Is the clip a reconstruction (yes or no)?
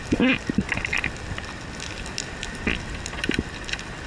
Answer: no